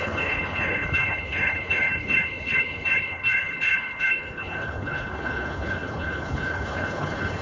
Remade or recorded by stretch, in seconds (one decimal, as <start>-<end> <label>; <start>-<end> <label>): 0.0-7.4 remade